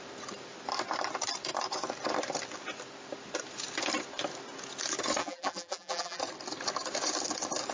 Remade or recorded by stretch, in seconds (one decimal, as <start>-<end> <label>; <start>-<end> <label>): 0.0-5.2 recorded; 5.2-6.2 remade; 6.2-7.7 recorded